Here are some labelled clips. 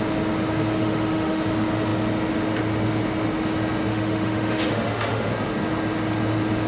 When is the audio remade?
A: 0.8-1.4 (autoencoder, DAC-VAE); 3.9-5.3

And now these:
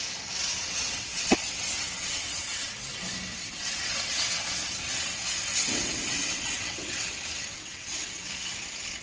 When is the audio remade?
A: 0.6-2.7 (vocoder, WaveNeXt); 3.4-4.7; 5.5-7.0; 7.5-8.3

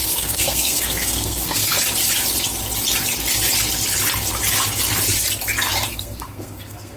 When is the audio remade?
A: 0.0-1.7 (codec, SNAC); 5.9-7.0